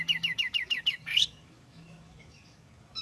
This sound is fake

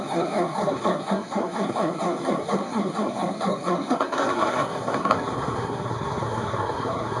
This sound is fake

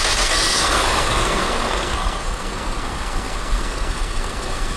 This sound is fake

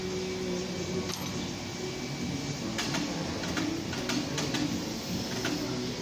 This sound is real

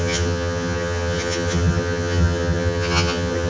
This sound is fake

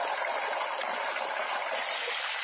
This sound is real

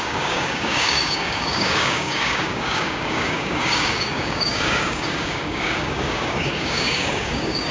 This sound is fake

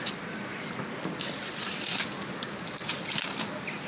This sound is real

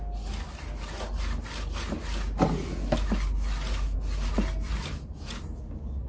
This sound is real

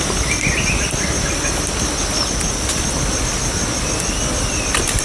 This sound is real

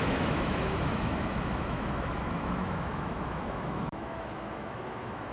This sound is fake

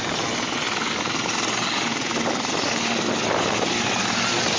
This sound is real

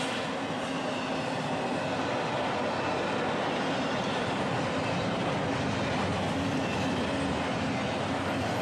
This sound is real